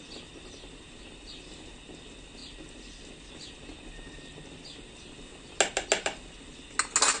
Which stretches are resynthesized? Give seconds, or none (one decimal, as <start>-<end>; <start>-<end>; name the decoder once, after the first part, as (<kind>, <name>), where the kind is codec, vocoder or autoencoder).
none